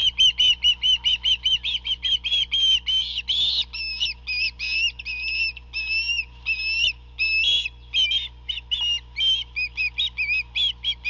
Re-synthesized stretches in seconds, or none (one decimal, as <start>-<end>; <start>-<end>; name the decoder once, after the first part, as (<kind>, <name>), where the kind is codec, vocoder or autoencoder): none